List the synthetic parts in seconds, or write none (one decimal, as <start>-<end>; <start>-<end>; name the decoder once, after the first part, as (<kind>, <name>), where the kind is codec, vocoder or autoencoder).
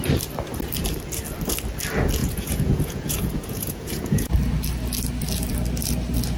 2.2-4.3 (vocoder, Vocos)